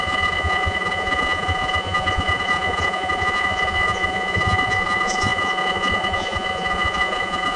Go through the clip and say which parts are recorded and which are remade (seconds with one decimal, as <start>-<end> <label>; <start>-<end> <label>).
0.0-7.6 remade